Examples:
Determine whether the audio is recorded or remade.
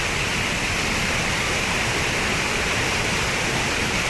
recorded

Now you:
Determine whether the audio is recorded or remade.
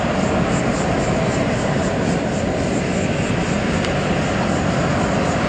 recorded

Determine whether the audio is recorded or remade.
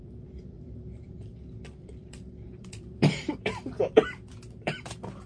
remade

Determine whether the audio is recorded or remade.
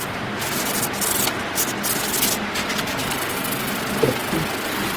recorded